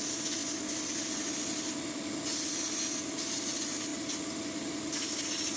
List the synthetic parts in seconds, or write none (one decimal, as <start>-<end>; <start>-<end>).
3.9-5.0